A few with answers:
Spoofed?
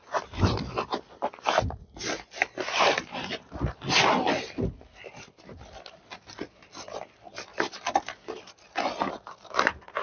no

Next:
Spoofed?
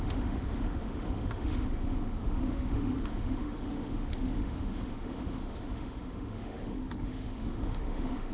yes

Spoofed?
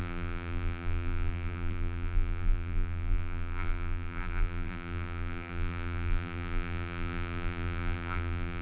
yes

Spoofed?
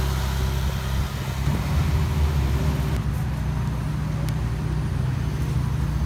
no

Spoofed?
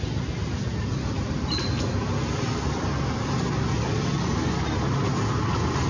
no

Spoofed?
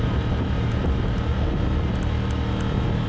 no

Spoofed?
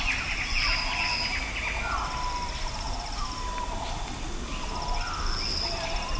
no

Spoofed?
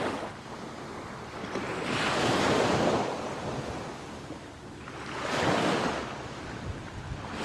no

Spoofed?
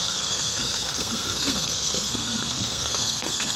yes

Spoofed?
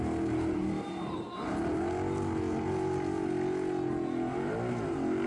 no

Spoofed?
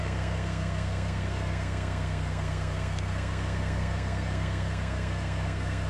yes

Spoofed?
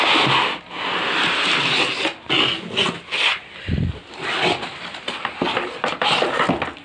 no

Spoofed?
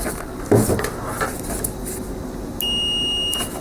no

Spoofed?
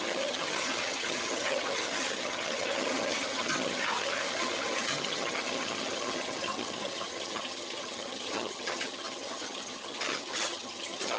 yes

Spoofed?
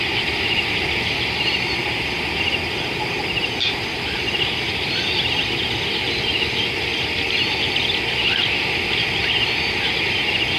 no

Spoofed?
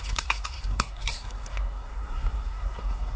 yes